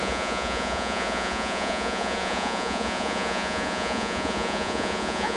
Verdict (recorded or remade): remade